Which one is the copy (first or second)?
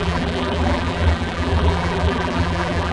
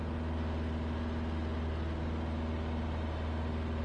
first